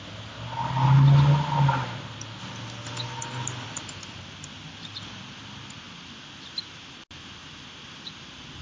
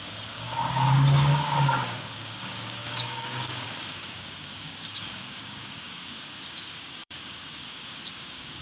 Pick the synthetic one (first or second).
second